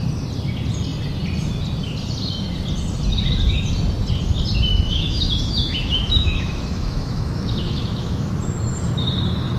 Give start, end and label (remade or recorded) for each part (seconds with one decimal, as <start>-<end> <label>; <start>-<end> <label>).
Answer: 0.0-4.7 recorded; 4.7-8.3 remade; 8.3-9.6 recorded